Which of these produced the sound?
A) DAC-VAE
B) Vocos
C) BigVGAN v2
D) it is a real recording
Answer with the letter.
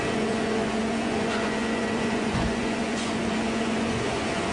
B